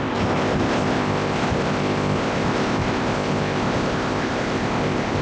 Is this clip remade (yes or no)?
yes